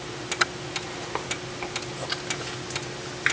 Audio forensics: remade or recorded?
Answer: recorded